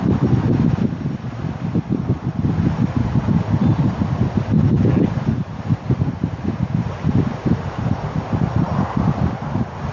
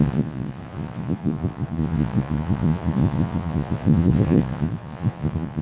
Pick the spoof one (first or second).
second